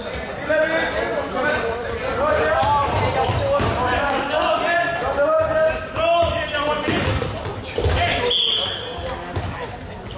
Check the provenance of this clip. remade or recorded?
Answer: recorded